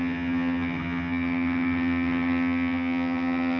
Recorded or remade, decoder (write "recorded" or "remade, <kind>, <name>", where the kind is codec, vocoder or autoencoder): remade, vocoder, HiFi-GAN